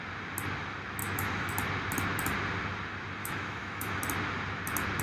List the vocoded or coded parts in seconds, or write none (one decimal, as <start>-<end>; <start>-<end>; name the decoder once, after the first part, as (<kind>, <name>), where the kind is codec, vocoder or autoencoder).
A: 1.0-1.5 (autoencoder, DAC-VAE); 3.2-4.0